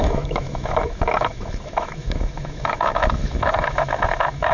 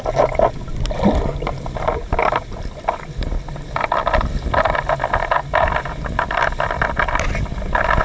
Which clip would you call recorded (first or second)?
second